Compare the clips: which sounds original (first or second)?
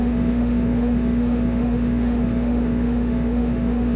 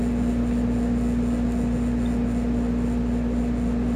second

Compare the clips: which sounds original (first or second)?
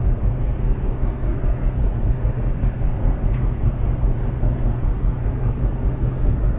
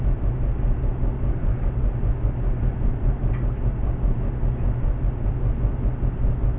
second